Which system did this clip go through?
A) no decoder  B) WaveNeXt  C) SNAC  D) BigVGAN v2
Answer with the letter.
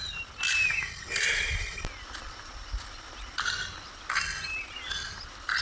A